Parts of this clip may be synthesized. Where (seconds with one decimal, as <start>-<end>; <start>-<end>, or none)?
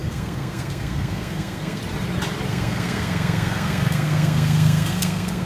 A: 0.0-1.8; 2.5-5.5